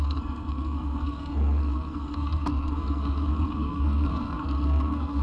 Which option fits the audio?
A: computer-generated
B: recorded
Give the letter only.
A